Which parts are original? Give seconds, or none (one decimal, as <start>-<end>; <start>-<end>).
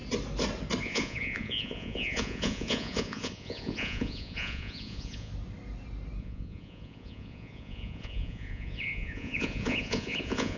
0.0-0.8; 5.3-6.2